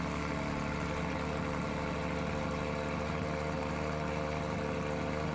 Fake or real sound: real